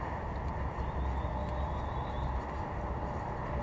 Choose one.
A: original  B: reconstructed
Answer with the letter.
A